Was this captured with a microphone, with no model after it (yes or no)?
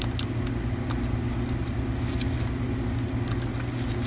yes